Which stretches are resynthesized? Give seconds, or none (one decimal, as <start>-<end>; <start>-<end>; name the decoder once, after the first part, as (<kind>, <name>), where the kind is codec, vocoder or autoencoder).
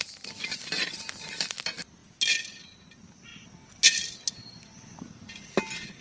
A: none